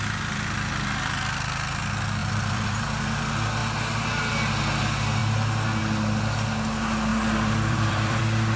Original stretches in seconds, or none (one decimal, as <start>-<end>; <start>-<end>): 0.0-2.2; 2.8-7.1; 8.2-8.6

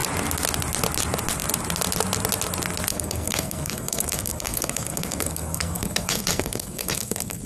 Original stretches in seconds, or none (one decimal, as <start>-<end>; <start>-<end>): 0.0-2.9

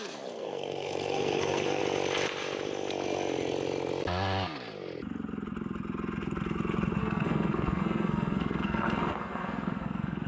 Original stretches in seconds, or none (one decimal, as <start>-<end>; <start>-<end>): 1.8-7.0

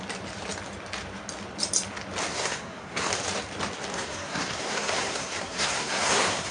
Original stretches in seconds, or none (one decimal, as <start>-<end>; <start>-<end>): 0.0-2.3; 3.1-3.9

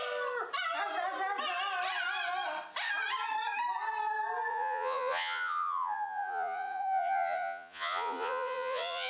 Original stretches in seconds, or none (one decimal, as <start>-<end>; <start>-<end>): 0.0-4.5

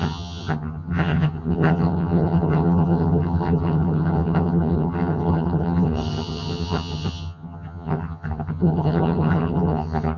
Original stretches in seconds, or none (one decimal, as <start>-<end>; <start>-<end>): none

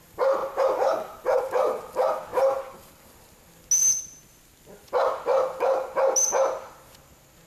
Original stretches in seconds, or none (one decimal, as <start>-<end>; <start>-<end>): 0.0-0.4; 1.4-7.5